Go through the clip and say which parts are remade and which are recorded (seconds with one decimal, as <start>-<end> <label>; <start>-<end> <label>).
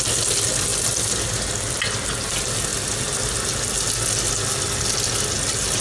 0.0-5.8 recorded